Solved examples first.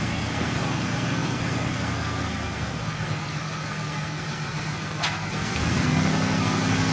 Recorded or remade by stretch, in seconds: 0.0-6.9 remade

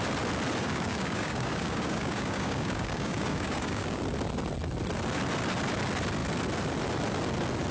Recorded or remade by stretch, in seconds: 0.0-0.6 recorded; 0.6-4.0 remade; 4.0-7.7 recorded

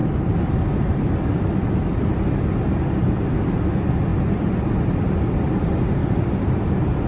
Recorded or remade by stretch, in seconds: 0.0-7.1 recorded

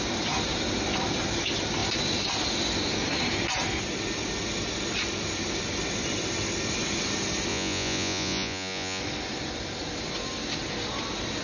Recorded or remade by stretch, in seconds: 0.0-7.5 recorded; 7.5-9.0 remade; 9.0-11.4 recorded

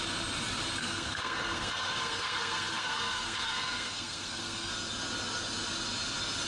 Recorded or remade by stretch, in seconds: 0.0-0.8 recorded; 0.8-4.7 remade; 4.7-6.5 recorded

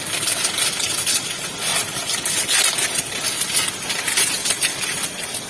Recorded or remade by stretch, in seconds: 0.0-5.5 recorded

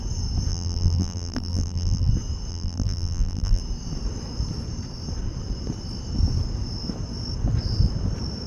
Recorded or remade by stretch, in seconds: 0.0-0.5 recorded; 0.5-2.1 remade; 2.1-2.5 recorded; 2.5-3.6 remade; 3.6-8.5 recorded